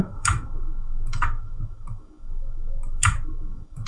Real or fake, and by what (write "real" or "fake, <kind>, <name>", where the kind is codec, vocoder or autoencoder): fake, autoencoder, DAC-VAE